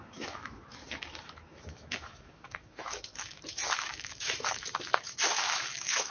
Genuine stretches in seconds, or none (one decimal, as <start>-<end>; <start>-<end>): none

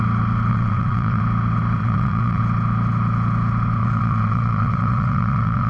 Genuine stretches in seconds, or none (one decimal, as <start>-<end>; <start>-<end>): 0.0-0.5; 1.2-1.8; 2.4-3.8

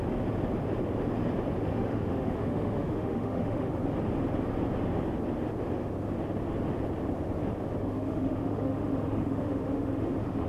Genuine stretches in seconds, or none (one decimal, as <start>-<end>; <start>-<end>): 0.0-1.7; 3.7-7.8

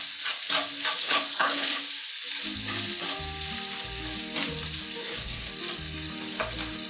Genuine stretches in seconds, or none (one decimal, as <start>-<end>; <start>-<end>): 0.0-1.0; 1.8-5.0; 5.5-6.9